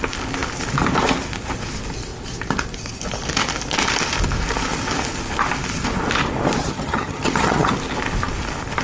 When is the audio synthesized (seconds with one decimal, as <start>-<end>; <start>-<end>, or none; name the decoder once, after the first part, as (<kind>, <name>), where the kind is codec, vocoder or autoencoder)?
6.6-7.7 (vocoder, HiFi-GAN)